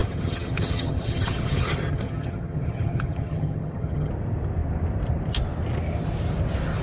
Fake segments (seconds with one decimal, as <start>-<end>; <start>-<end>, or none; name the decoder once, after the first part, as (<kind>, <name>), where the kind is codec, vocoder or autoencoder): 0.0-4.1 (vocoder, HiFi-GAN)